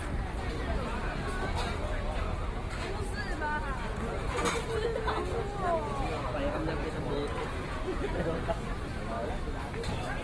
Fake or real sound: real